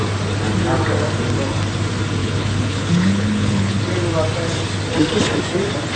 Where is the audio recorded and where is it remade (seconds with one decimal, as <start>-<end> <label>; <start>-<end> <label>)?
0.0-2.2 recorded; 2.2-3.8 remade; 3.8-6.0 recorded